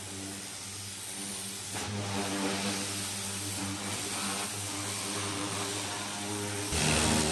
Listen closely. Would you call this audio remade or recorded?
recorded